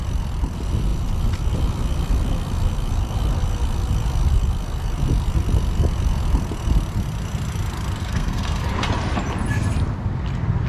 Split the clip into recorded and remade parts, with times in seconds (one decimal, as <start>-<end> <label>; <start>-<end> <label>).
0.0-8.0 recorded; 8.0-8.6 remade; 8.6-10.7 recorded